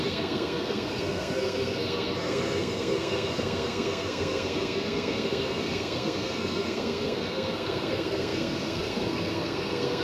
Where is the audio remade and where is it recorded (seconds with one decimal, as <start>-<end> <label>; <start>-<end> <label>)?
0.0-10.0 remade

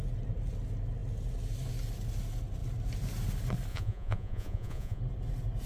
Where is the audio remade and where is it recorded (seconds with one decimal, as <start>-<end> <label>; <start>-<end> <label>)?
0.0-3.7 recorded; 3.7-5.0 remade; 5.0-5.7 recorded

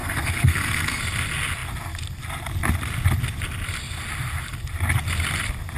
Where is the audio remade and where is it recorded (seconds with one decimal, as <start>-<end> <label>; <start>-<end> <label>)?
0.0-1.0 remade; 1.0-5.8 recorded

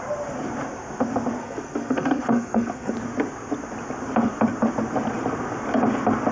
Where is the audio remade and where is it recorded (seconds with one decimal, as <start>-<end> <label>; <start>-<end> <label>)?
0.0-1.4 recorded; 1.4-2.9 remade; 2.9-6.3 recorded